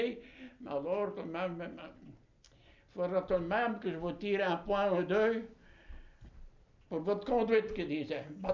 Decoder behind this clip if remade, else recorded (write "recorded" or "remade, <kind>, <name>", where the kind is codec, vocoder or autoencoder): recorded